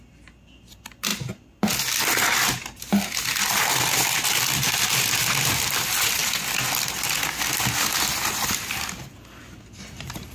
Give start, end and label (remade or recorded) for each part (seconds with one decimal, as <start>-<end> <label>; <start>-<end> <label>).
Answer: 0.0-10.3 recorded